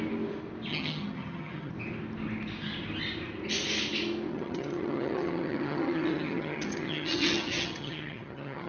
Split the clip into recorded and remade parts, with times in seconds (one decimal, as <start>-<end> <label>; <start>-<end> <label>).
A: 0.0-0.7 recorded; 0.7-1.7 remade; 1.7-4.3 recorded; 4.3-8.7 remade